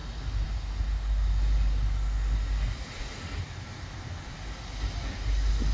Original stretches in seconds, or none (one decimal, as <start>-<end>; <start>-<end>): 0.0-5.7